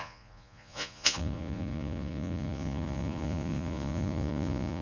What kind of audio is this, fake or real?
fake